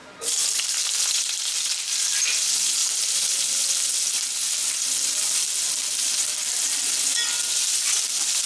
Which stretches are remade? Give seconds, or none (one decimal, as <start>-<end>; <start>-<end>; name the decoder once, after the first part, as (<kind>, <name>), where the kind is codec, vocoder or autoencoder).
none

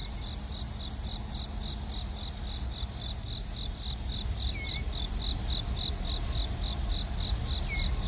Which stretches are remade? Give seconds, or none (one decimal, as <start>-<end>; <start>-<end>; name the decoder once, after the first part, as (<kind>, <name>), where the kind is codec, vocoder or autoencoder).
none

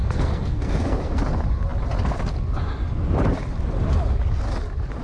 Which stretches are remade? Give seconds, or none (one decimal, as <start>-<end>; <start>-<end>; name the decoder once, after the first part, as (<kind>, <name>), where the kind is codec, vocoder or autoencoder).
0.0-1.2 (codec, SNAC)

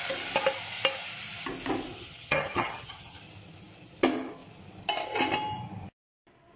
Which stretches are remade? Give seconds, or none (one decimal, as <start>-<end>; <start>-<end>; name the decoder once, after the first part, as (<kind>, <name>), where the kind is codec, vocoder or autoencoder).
1.9-3.2 (vocoder, HiFi-GAN)

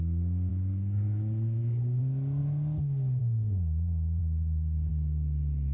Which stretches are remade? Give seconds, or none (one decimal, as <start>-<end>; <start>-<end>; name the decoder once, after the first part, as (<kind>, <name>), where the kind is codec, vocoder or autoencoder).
0.5-2.0 (codec, HILCodec); 4.2-4.9

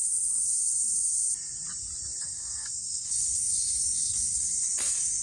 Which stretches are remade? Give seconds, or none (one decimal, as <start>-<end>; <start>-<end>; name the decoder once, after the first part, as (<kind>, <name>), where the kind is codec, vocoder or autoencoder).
2.2-5.2 (codec, SNAC)